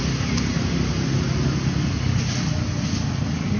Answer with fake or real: real